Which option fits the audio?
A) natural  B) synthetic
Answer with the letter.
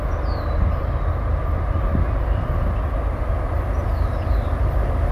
A